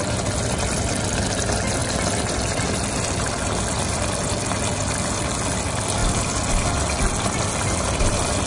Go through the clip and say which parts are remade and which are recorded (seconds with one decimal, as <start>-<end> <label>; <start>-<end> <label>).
0.0-8.5 recorded

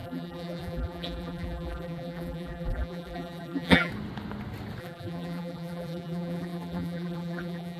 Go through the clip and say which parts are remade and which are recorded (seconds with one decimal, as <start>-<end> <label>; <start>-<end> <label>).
0.0-3.9 remade; 3.9-4.8 recorded; 4.8-7.8 remade

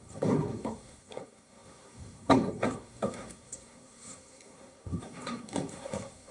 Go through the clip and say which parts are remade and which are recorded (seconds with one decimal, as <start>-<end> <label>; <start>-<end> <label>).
0.0-6.3 remade

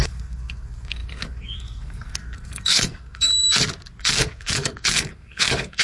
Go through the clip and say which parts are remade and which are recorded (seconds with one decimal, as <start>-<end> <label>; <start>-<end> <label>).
0.0-3.3 remade; 3.3-4.0 recorded; 4.0-5.8 remade